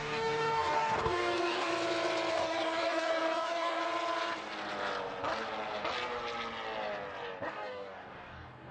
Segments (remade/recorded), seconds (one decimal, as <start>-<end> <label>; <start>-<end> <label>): 0.0-1.7 remade; 1.7-2.3 recorded; 2.3-3.8 remade; 3.8-7.5 recorded; 7.5-8.7 remade